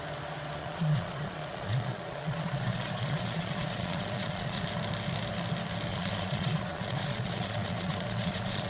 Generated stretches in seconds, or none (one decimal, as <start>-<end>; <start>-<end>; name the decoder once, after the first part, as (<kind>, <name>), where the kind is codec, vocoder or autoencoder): 0.6-4.6 (vocoder, Vocos); 5.9-8.7

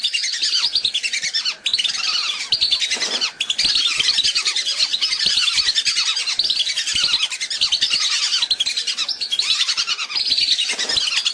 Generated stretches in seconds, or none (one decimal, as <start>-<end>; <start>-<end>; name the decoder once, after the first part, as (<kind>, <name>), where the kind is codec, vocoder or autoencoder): none

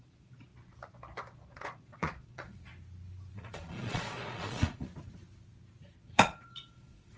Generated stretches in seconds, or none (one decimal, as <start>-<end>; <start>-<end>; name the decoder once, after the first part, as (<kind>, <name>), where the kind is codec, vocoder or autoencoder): 0.0-0.5 (vocoder, Vocos); 1.5-2.7; 3.3-4.9; 6.0-7.2